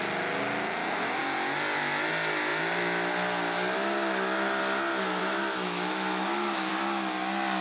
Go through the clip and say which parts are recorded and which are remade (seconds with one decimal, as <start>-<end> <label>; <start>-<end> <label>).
0.0-5.2 recorded; 5.2-6.7 remade; 6.7-7.6 recorded